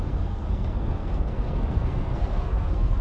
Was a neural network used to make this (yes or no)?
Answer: yes